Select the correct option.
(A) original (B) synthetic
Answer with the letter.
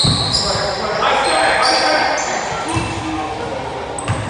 A